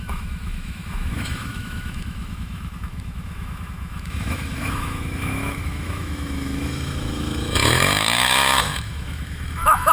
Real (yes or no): no